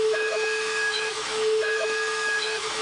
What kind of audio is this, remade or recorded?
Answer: remade